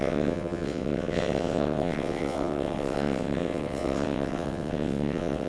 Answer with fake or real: fake